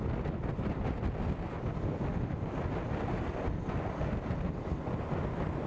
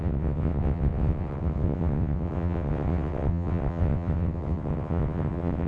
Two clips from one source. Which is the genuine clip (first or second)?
first